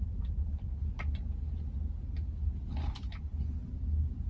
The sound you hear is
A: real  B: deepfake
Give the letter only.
A